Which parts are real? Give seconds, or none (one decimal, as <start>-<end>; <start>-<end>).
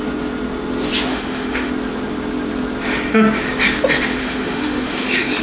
0.0-1.1; 1.7-4.2